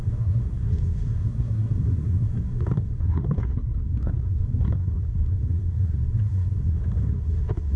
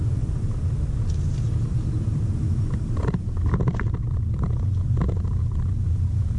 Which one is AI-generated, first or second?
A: first